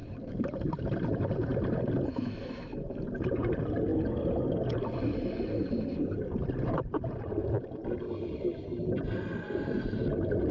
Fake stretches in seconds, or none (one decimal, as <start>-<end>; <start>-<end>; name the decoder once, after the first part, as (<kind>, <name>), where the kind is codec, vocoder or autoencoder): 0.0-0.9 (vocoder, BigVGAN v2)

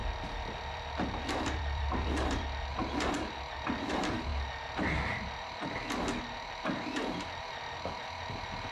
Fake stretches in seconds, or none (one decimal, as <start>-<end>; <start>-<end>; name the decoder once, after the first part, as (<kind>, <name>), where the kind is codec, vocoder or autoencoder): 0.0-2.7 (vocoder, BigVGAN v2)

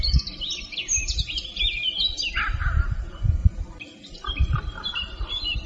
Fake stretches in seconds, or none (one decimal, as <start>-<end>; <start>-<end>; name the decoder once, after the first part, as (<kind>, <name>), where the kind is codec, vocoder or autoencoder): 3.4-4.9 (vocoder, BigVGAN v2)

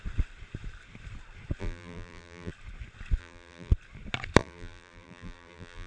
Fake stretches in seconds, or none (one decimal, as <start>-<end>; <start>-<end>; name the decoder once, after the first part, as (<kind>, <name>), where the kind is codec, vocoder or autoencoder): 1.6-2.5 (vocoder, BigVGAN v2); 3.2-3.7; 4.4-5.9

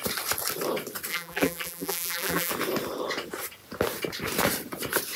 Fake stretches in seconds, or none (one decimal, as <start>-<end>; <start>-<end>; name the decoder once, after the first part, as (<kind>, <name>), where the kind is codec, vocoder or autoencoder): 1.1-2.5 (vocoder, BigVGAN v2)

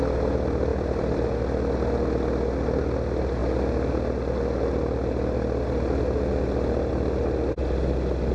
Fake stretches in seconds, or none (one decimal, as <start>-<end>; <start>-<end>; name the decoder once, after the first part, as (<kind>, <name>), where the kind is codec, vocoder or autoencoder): 0.7-1.3 (vocoder, BigVGAN v2)

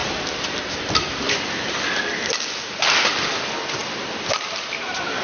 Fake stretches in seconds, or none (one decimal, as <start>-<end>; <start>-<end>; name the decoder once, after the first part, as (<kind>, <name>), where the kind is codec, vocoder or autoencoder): none